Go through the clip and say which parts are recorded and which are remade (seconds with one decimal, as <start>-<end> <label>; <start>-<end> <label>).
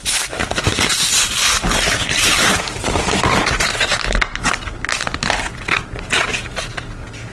0.0-3.0 remade; 3.0-7.3 recorded